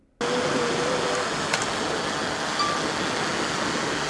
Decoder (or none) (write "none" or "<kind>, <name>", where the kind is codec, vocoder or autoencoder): none